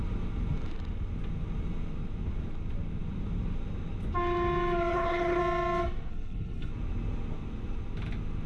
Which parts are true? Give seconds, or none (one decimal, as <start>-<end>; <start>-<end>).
0.0-4.9; 5.4-6.1; 6.7-8.5